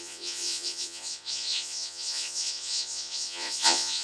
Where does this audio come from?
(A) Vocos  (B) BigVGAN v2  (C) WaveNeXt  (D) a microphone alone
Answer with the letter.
A